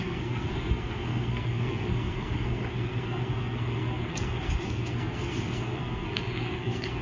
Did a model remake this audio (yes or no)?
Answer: yes